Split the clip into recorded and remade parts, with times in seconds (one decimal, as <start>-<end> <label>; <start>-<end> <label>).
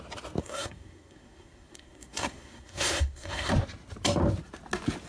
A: 0.0-0.4 recorded; 0.4-3.5 remade; 3.5-5.1 recorded